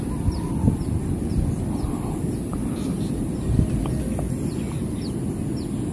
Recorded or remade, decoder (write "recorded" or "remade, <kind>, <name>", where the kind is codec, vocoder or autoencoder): recorded